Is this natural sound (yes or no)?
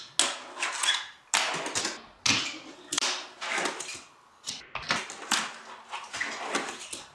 yes